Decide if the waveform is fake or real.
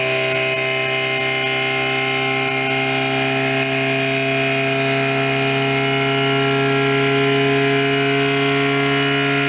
real